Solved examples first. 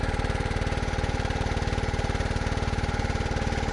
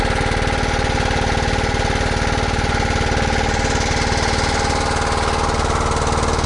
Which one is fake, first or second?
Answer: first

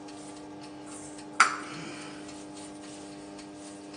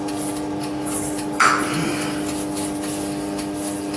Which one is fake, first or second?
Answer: second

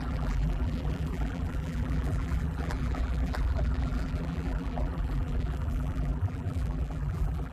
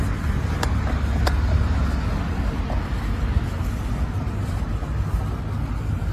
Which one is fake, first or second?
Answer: first